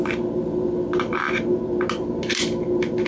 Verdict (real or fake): real